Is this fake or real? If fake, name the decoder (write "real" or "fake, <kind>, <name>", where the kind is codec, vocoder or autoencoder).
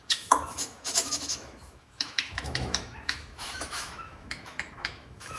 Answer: fake, autoencoder, DAC-VAE